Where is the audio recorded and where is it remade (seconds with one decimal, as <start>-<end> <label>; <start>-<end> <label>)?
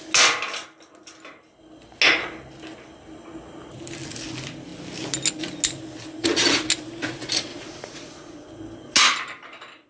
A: 0.0-7.5 recorded; 7.5-8.5 remade; 8.5-9.9 recorded